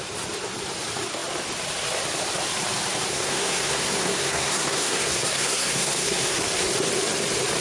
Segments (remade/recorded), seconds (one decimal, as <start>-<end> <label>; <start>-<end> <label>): 0.0-3.1 recorded; 3.1-6.4 remade; 6.4-7.6 recorded